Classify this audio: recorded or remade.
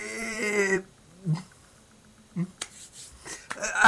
remade